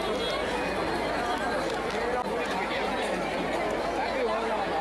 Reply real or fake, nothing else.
real